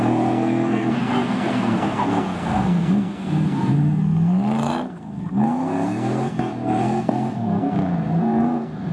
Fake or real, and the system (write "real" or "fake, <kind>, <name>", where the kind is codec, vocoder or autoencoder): fake, codec, SNAC